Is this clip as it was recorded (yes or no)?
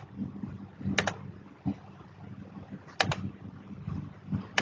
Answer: yes